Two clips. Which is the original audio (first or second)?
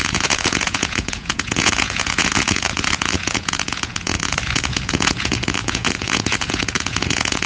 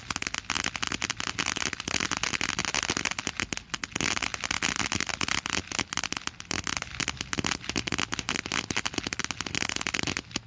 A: second